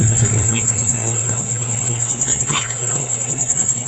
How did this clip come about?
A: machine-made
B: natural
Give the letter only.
A